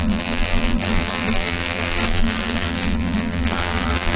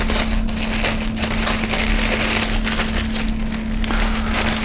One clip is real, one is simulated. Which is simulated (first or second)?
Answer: first